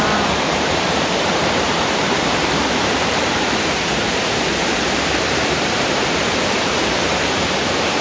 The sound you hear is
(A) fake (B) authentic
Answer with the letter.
A